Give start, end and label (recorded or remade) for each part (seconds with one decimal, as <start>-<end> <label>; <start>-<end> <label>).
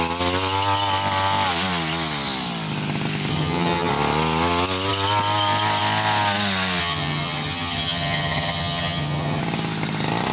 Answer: 0.0-3.3 recorded; 3.3-3.9 remade; 3.9-6.8 recorded; 6.8-9.4 remade; 9.4-10.3 recorded